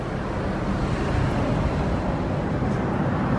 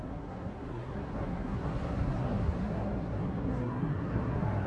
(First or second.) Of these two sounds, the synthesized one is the second